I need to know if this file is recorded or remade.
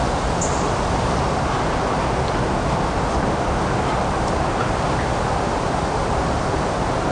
recorded